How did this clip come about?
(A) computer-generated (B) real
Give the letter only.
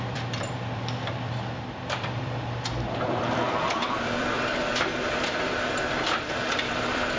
A